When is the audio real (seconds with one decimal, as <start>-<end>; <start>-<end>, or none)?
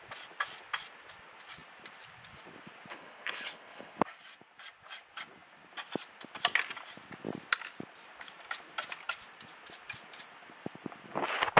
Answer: 0.0-2.9; 4.0-11.6